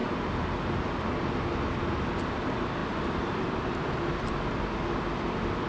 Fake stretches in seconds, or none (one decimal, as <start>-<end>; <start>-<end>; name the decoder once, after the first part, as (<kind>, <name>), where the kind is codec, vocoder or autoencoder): 0.0-0.8 (vocoder, BigVGAN v2); 2.8-3.4